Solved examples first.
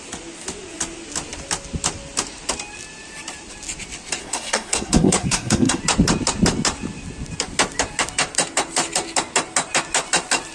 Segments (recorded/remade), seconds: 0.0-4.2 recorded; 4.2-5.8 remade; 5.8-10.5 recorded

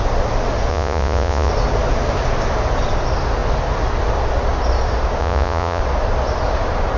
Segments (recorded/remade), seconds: 0.0-0.7 recorded; 0.7-1.5 remade; 1.5-5.2 recorded; 5.2-5.8 remade; 5.8-7.0 recorded

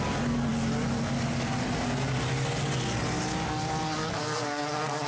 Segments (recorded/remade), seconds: 0.0-4.2 recorded; 4.2-5.1 remade

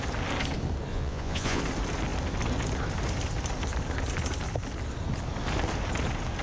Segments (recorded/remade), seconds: 0.0-0.9 recorded; 0.9-1.6 remade; 1.6-6.4 recorded

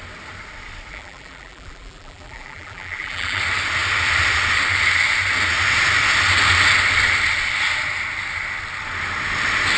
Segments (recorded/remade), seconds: 0.0-0.9 recorded; 0.9-3.4 remade; 3.4-9.8 recorded

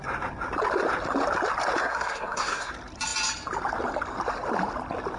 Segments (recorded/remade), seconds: 0.0-1.8 recorded; 1.8-2.7 remade; 2.7-5.2 recorded

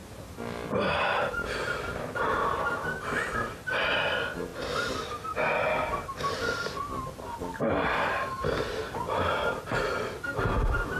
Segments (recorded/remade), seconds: 0.0-11.0 recorded